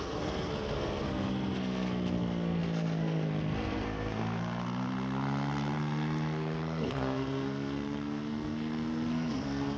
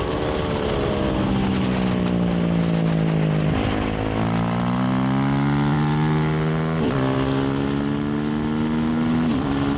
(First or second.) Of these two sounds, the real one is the second